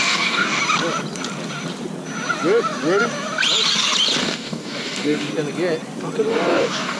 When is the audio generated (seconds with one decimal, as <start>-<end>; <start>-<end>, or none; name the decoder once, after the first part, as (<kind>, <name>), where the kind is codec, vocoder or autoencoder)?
0.0-0.6 (codec, DAC); 4.2-5.3; 6.3-7.0